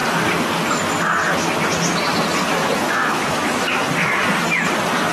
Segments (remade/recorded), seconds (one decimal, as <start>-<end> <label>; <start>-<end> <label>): 0.0-2.5 recorded; 2.5-3.8 remade; 3.8-5.1 recorded